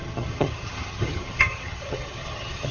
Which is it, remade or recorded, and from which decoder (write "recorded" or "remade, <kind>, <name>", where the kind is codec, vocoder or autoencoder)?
remade, vocoder, HiFi-GAN